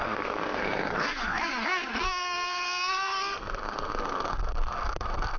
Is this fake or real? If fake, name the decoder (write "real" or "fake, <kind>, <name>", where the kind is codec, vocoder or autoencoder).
fake, codec, SNAC